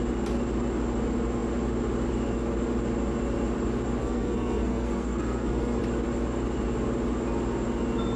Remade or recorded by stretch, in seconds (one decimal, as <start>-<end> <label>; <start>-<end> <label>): 0.0-4.0 recorded; 4.0-5.8 remade; 5.8-8.2 recorded